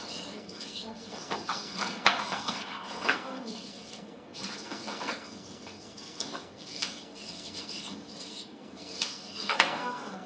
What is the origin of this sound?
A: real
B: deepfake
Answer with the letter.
B